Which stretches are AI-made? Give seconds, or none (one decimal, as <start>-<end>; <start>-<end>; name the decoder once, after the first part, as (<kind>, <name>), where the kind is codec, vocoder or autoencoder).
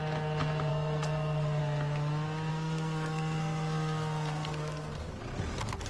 0.7-1.6 (codec, SNAC); 2.5-5.2